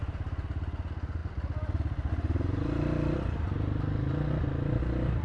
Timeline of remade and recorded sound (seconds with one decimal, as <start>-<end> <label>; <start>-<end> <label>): 0.0-5.2 recorded